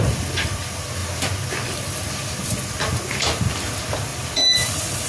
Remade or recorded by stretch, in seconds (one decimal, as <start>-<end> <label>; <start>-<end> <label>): 0.0-1.0 remade; 1.0-1.7 recorded; 1.7-5.1 remade